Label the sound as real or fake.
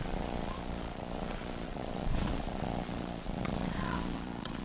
fake